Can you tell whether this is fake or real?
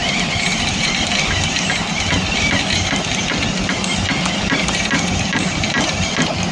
real